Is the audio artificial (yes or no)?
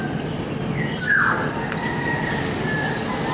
no